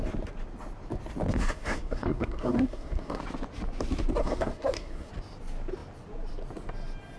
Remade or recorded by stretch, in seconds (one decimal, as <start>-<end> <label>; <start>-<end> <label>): 0.0-1.4 recorded; 1.4-3.2 remade; 3.2-4.2 recorded; 4.2-5.1 remade; 5.1-7.2 recorded